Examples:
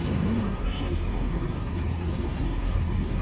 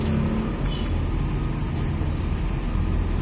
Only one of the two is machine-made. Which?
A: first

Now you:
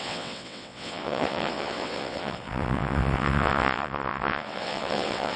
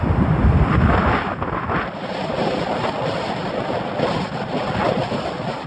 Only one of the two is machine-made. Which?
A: first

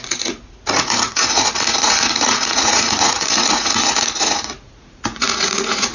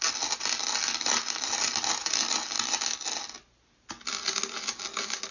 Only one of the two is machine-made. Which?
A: first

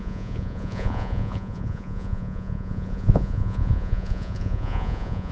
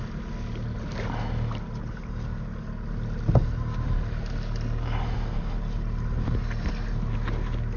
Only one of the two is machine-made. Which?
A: first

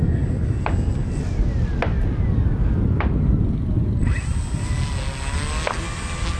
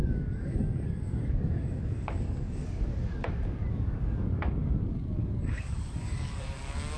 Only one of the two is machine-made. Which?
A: second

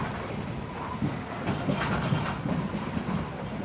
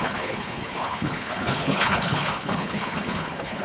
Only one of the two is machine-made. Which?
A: second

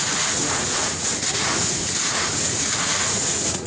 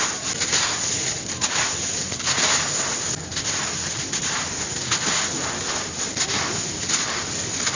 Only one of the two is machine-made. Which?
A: first